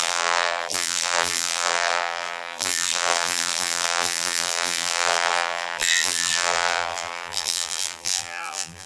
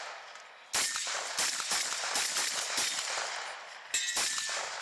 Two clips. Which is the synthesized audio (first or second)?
first